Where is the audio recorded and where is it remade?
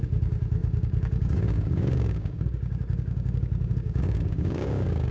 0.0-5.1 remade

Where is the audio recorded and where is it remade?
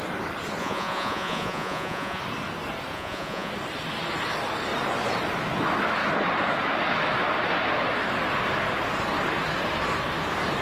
0.0-0.6 recorded; 0.6-2.2 remade; 2.2-2.9 recorded; 2.9-3.5 remade; 3.5-10.6 recorded